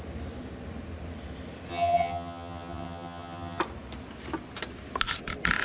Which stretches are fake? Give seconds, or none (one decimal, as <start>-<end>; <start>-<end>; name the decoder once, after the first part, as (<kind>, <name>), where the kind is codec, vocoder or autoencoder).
1.7-3.6 (vocoder, HiFi-GAN)